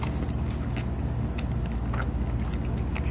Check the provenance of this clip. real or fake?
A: real